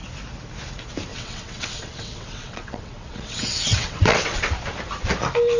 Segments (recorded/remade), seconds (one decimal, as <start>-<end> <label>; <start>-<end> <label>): 0.0-1.1 recorded; 1.1-4.5 remade; 4.5-5.6 recorded